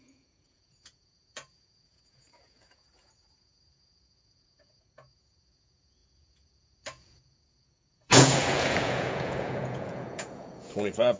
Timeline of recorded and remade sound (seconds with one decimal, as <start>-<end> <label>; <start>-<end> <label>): 0.0-11.2 remade